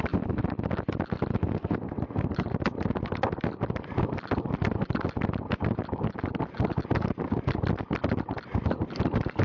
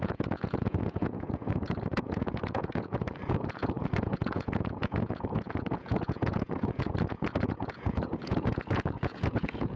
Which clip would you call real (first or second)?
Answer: first